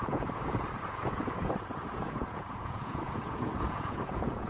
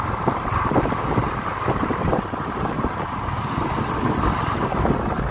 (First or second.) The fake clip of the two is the first